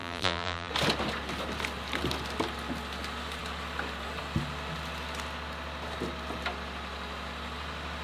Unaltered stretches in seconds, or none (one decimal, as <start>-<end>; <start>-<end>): 0.7-8.0